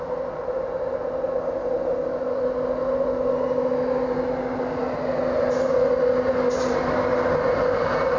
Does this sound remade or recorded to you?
recorded